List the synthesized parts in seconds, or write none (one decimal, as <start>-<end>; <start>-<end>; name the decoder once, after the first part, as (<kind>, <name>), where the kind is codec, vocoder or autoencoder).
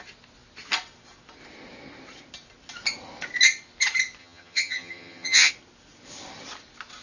4.2-5.5 (vocoder, HiFi-GAN)